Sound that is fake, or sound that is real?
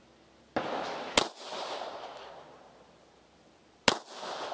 real